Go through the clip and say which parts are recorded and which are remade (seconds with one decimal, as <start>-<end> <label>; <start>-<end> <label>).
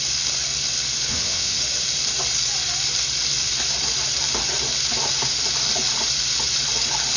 0.0-1.1 recorded; 1.1-1.6 remade; 1.6-7.2 recorded